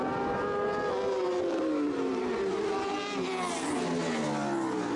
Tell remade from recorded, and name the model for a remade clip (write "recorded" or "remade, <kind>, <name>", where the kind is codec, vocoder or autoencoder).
recorded